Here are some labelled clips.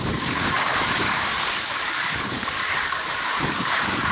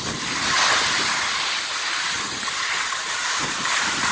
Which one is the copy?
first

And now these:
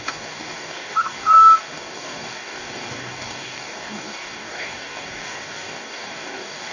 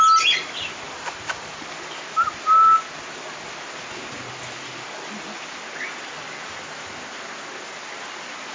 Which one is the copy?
first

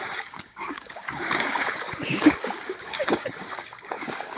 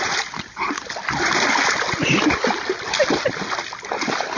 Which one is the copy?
first